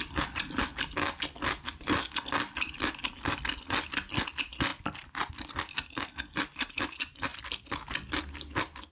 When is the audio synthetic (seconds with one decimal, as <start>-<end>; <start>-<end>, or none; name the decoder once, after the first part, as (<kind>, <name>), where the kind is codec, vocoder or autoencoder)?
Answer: none